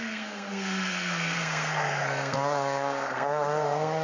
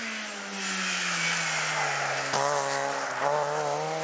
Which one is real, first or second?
second